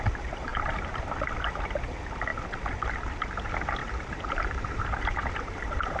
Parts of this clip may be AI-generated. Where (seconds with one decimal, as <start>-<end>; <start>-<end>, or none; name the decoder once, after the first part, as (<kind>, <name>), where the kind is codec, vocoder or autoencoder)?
0.5-1.0 (vocoder, BigVGAN v2); 3.8-5.1